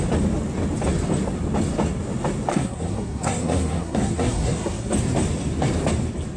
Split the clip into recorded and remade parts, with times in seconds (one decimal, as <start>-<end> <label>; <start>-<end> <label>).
0.0-2.5 recorded; 2.5-4.9 remade; 4.9-6.4 recorded